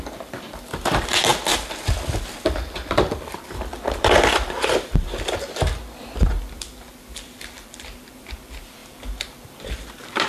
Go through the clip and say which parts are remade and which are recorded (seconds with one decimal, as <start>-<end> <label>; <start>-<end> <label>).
0.0-10.3 remade